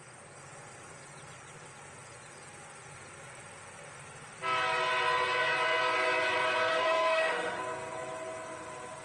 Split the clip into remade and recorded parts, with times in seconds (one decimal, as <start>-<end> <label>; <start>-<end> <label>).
0.0-6.7 recorded; 6.7-7.6 remade; 7.6-9.0 recorded